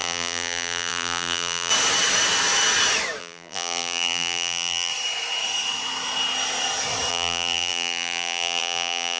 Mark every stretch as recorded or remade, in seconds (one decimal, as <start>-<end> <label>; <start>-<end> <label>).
0.0-1.7 remade; 1.7-3.2 recorded; 3.2-4.9 remade; 4.9-7.1 recorded; 7.1-9.2 remade